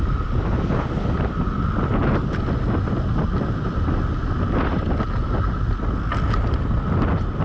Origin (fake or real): real